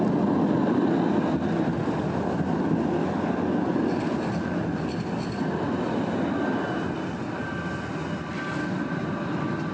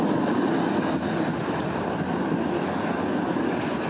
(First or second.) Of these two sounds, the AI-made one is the second